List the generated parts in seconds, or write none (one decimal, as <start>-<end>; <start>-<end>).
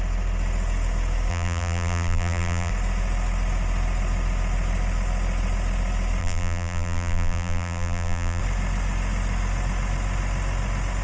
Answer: 1.3-2.7; 6.2-8.4